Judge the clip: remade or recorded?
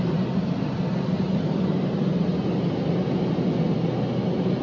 recorded